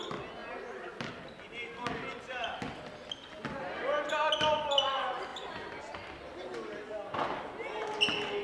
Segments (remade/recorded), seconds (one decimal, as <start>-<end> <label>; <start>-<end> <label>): 0.0-8.4 recorded